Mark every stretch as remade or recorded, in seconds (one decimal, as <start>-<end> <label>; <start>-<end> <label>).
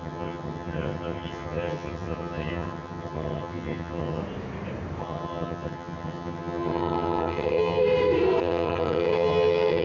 0.0-4.2 remade; 4.2-5.0 recorded; 5.0-7.8 remade; 7.8-8.4 recorded; 8.4-9.8 remade